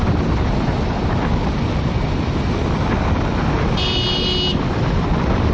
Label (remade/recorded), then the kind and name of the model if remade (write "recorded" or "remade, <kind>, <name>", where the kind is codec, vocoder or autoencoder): recorded